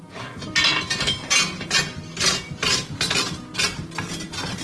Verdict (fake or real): real